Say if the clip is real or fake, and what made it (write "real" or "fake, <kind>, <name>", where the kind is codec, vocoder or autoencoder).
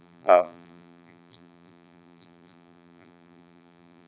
fake, vocoder, BigVGAN v2